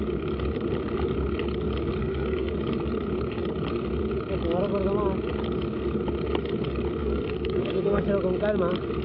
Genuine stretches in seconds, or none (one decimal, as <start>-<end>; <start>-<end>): 0.0-2.0; 2.5-7.0; 8.0-9.0